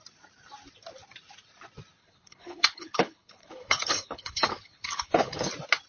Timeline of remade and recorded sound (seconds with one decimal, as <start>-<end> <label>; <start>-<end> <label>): 0.0-2.0 recorded; 2.0-5.5 remade; 5.5-5.9 recorded